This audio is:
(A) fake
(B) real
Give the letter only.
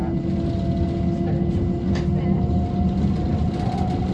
B